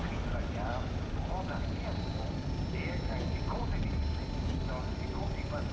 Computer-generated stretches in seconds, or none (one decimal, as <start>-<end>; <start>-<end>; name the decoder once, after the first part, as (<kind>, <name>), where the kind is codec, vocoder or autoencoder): none